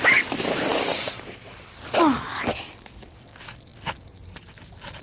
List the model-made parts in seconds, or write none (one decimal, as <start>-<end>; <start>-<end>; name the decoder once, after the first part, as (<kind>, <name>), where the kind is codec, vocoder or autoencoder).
0.7-3.7 (vocoder, BigVGAN v2)